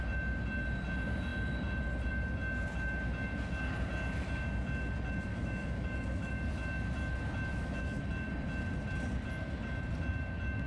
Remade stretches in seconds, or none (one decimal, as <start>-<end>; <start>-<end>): 5.3-6.3; 7.5-8.0